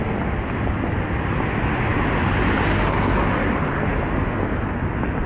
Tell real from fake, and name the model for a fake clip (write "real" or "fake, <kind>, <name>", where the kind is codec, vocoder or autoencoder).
real